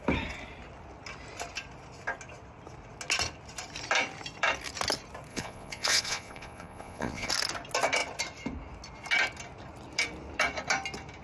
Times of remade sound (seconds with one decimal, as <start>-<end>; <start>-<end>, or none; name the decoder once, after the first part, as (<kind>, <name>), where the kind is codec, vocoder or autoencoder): 5.3-7.3 (vocoder, Vocos)